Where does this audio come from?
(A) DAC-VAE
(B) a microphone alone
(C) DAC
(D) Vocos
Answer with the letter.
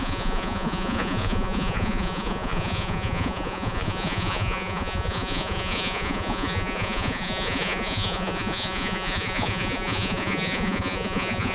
D